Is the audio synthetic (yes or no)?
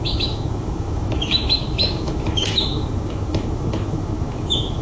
yes